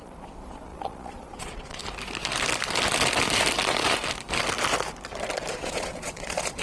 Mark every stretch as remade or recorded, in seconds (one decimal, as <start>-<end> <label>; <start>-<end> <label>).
0.0-1.8 remade; 1.8-5.5 recorded; 5.5-6.6 remade